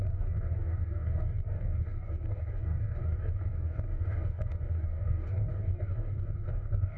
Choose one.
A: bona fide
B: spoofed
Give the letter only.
B